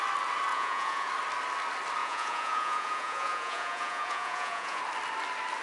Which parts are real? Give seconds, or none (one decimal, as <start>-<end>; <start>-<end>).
0.0-0.5; 1.1-2.0; 4.8-5.6